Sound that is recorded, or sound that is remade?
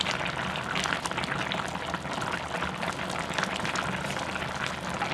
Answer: recorded